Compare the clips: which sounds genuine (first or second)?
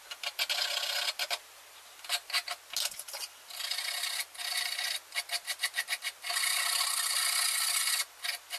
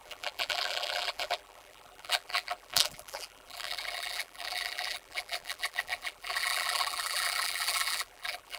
first